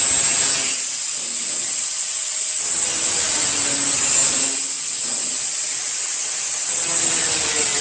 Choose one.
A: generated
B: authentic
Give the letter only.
B